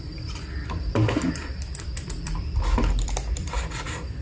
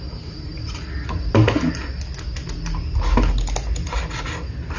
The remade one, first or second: first